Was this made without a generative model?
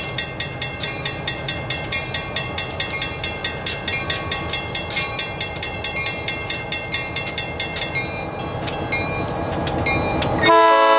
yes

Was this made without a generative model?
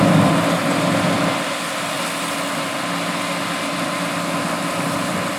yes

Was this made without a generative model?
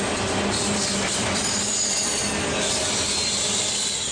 yes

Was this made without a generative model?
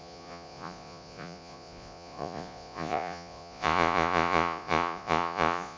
no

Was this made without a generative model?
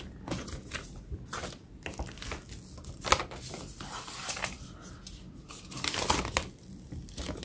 yes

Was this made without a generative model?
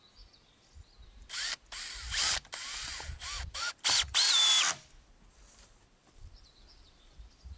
yes